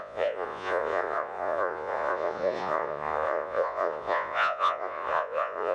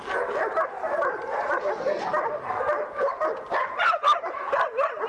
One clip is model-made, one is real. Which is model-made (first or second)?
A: first